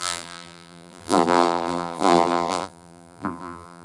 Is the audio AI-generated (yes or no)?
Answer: yes